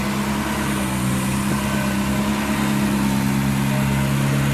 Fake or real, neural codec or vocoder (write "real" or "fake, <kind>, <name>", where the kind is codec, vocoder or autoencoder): real